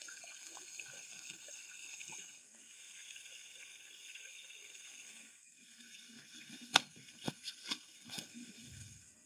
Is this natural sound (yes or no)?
no